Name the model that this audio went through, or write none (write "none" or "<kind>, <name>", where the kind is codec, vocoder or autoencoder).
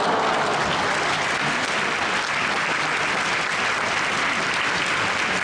none